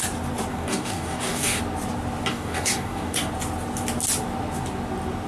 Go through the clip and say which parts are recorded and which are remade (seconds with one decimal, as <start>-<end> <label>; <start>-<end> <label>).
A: 0.0-0.5 recorded; 0.5-1.6 remade; 1.6-2.3 recorded; 2.3-3.3 remade; 3.3-5.3 recorded